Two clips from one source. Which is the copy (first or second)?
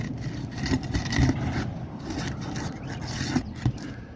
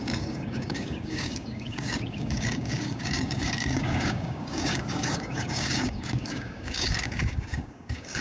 second